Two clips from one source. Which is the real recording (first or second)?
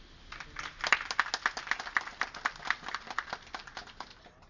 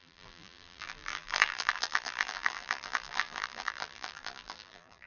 first